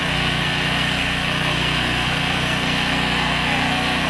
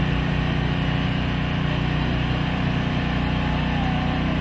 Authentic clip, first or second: second